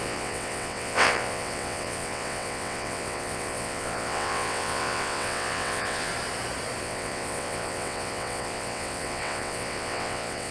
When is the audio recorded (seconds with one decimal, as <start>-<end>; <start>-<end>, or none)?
6.1-6.8